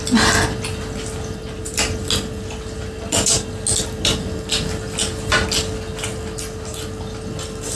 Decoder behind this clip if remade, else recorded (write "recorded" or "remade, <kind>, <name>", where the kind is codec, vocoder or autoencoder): recorded